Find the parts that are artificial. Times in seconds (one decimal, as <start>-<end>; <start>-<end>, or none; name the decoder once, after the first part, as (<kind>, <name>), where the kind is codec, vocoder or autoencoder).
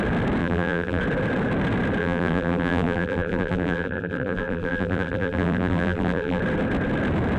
0.4-1.0 (vocoder, BigVGAN v2); 2.0-6.4